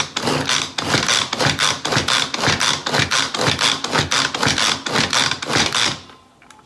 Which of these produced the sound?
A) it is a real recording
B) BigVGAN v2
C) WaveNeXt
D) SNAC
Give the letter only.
A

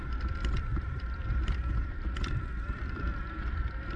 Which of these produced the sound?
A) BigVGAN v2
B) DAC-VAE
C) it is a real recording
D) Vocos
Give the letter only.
A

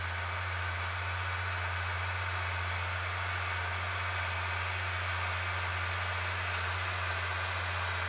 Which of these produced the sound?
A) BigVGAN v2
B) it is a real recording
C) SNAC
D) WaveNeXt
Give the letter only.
B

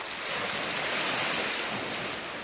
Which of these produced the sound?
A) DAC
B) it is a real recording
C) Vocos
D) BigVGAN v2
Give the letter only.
B